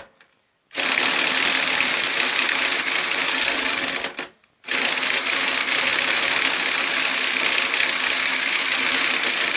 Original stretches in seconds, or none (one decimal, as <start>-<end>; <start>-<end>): 0.0-8.3; 8.8-9.6